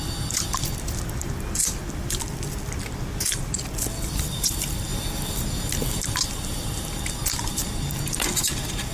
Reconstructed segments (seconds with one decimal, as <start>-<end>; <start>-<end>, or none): 0.0-4.9; 6.2-8.9